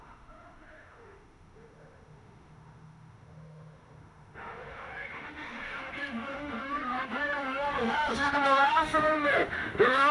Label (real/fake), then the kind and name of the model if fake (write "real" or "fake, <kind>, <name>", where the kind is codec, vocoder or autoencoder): fake, autoencoder, DAC-VAE